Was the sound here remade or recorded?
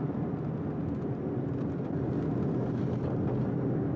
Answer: recorded